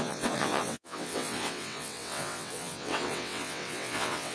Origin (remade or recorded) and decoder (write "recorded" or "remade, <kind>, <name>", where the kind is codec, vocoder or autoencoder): remade, vocoder, WaveNeXt